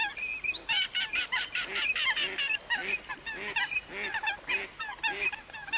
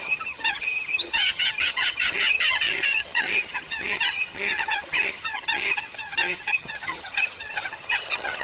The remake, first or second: second